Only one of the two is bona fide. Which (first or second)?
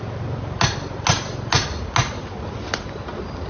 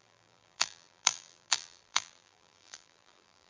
first